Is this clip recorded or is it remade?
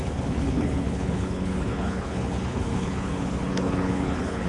remade